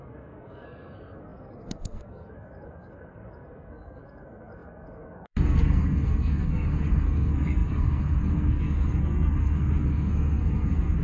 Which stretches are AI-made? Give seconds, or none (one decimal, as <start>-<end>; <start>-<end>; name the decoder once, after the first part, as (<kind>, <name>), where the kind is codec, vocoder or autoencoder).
0.0-11.0 (codec, SNAC)